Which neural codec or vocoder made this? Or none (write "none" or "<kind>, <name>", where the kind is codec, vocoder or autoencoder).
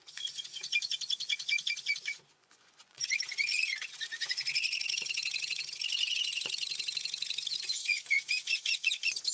vocoder, Vocos